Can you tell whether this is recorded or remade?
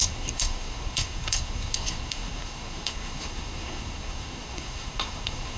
remade